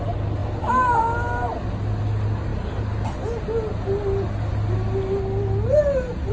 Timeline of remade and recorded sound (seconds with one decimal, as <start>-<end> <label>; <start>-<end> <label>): 0.0-6.3 recorded